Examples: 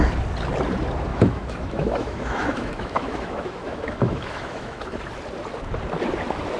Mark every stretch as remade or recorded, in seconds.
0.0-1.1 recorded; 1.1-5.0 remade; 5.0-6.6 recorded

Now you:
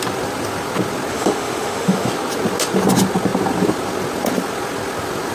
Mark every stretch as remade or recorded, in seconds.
0.0-1.1 recorded; 1.1-2.1 remade; 2.1-5.3 recorded

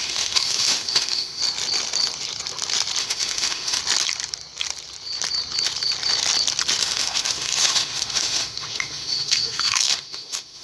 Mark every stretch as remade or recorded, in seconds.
0.0-1.4 remade; 1.4-3.0 recorded; 3.0-3.8 remade; 3.8-6.8 recorded; 6.8-10.6 remade

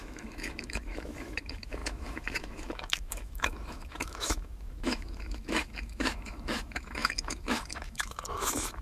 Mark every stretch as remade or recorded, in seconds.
0.0-8.8 remade

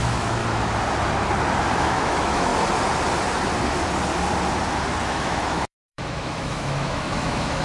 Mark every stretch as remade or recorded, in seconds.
0.0-0.4 remade; 0.4-1.8 recorded; 1.8-2.5 remade; 2.5-5.1 recorded; 5.1-7.6 remade

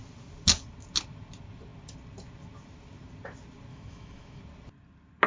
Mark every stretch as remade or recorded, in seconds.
0.0-3.7 recorded; 3.7-4.4 remade; 4.4-5.3 recorded